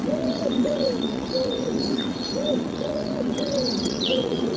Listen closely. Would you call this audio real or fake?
fake